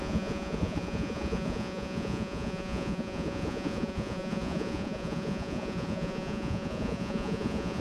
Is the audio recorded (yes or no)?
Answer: no